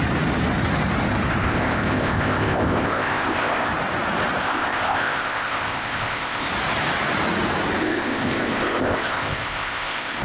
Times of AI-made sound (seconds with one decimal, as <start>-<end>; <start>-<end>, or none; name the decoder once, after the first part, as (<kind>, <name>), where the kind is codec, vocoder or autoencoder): 1.4-3.7 (codec, ZipCodec); 4.4-6.5; 7.8-10.2